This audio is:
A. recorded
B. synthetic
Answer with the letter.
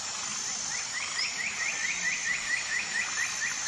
A